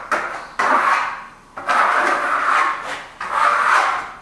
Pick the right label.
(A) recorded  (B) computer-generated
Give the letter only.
A